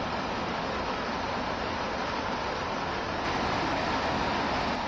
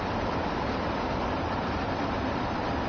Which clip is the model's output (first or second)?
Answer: second